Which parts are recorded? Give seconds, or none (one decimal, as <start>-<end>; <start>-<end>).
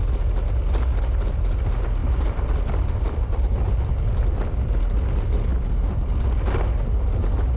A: 0.0-2.0; 4.7-7.6